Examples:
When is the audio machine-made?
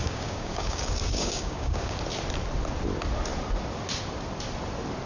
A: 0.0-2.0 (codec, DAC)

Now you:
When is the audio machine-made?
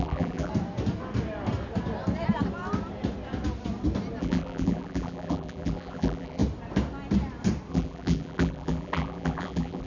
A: 0.0-0.5 (vocoder, BigVGAN v2); 4.2-6.4; 7.7-9.9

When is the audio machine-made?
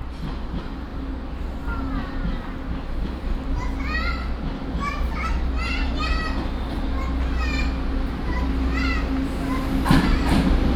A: none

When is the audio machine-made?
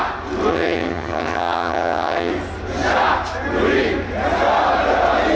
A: 0.5-2.3 (vocoder, HiFi-GAN)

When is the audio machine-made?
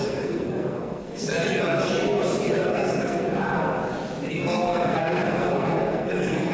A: 0.0-1.9 (codec, SNAC); 2.5-3.8; 4.3-6.5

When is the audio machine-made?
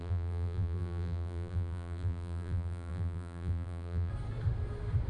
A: 0.0-4.1 (vocoder, BigVGAN v2)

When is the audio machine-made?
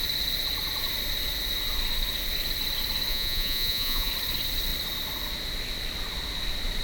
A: 3.1-4.1 (vocoder, Vocos)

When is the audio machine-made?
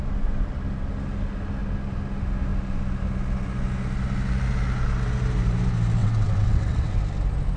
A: 6.0-7.0 (vocoder, WaveNeXt)